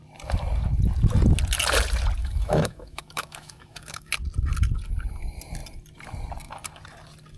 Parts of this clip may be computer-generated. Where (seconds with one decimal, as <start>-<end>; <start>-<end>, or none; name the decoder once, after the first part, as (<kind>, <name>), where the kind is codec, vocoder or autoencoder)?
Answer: 2.2-4.1 (autoencoder, DAC-VAE)

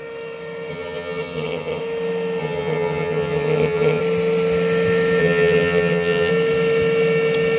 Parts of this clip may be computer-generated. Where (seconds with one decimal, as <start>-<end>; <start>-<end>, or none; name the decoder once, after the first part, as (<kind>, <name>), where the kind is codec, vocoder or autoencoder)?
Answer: 0.7-1.8 (vocoder, HiFi-GAN); 2.4-4.0; 5.2-6.3

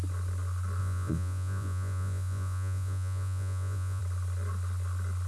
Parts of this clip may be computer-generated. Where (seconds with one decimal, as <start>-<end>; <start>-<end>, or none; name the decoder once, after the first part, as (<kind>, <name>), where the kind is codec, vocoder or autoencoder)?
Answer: 0.8-4.0 (vocoder, Vocos)

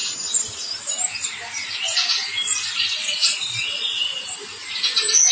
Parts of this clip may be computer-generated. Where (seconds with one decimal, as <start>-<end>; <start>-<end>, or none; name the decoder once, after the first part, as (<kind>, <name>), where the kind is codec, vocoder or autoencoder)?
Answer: 0.0-0.8 (vocoder, BigVGAN v2); 3.0-4.8